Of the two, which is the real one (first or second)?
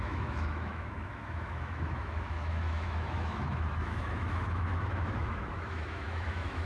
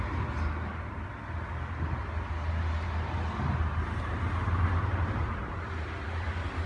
second